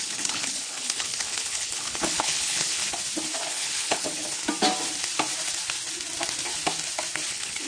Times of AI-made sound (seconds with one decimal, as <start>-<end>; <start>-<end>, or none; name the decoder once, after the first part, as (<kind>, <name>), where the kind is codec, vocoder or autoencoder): 0.0-2.8 (codec, HILCodec); 3.5-4.4; 7.3-7.7